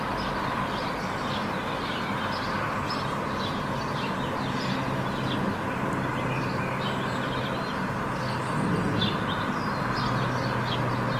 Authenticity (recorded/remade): recorded